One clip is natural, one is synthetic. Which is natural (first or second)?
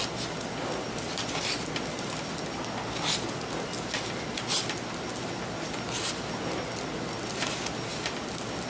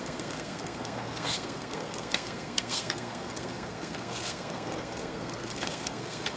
first